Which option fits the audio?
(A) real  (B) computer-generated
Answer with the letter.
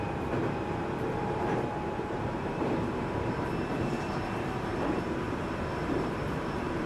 B